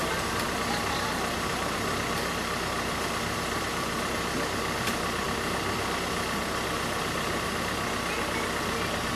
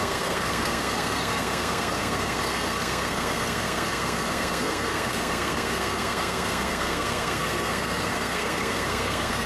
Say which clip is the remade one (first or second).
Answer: second